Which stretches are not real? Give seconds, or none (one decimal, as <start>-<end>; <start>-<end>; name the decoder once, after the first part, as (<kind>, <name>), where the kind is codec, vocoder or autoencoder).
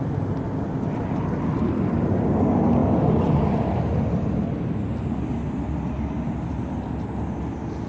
none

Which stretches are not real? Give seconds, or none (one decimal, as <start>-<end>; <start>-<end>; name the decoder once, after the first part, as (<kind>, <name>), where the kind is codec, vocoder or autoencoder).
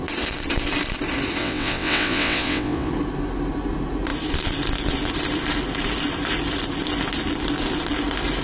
1.4-2.9 (vocoder, WaveNeXt)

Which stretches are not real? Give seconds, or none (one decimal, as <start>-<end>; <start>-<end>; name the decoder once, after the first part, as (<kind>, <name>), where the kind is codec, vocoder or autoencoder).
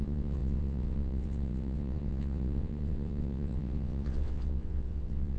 0.0-5.4 (vocoder, WaveNeXt)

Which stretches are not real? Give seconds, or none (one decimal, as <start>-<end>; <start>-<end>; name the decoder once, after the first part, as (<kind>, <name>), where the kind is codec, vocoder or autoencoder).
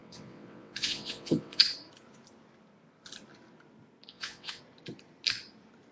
0.0-1.6 (vocoder, WaveNeXt); 4.1-4.6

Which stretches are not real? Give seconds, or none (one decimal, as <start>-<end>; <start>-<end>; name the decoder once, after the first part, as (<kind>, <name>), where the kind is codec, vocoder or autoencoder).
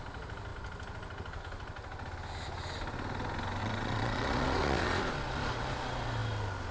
3.6-5.0 (vocoder, WaveNeXt)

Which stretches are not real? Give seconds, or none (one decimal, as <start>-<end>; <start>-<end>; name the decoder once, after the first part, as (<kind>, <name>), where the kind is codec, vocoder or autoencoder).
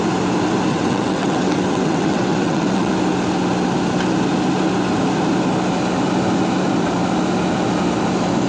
0.7-2.9 (vocoder, WaveNeXt)